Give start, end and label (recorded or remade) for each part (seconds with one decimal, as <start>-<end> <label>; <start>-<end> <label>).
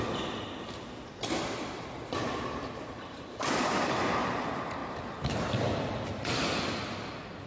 0.0-7.5 recorded